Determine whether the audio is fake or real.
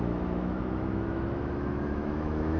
fake